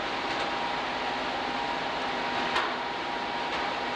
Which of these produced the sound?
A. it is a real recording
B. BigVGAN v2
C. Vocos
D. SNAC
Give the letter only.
A